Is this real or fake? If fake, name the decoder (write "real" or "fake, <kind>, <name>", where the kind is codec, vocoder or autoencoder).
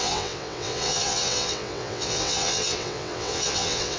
fake, vocoder, WaveNeXt